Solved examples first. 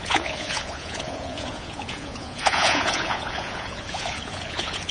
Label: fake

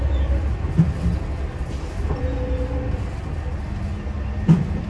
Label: real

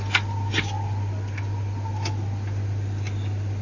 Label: real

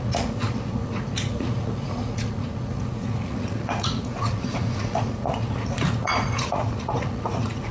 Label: fake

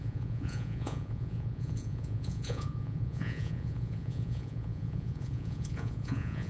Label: fake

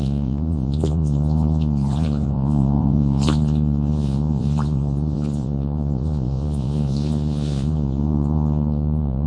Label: fake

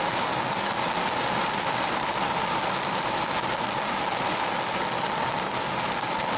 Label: real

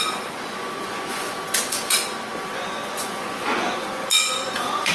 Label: fake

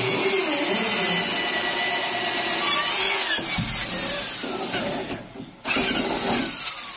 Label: real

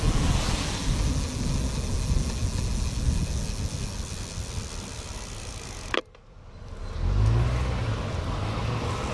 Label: real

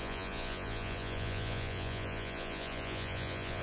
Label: fake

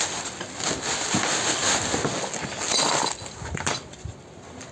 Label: real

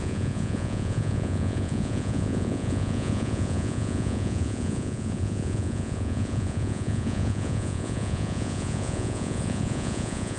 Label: fake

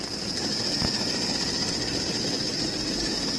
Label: real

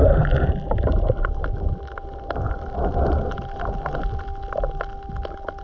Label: real